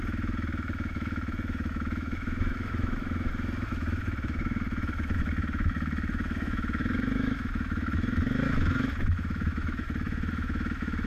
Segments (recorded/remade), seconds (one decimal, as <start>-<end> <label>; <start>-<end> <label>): 0.0-11.1 remade